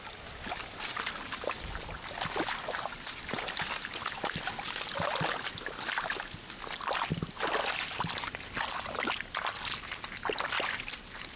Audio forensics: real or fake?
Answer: real